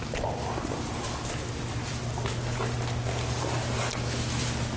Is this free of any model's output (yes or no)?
yes